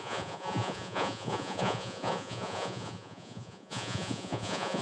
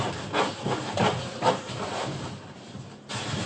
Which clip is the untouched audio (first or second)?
second